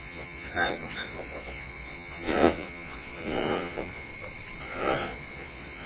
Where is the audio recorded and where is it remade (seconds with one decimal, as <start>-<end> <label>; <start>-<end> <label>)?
0.0-4.1 remade; 4.1-4.6 recorded; 4.6-5.9 remade